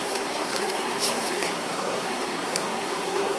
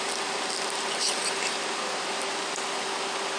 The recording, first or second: second